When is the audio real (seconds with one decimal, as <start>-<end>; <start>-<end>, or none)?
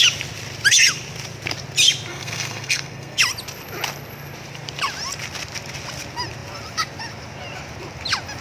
0.0-2.1; 3.2-8.4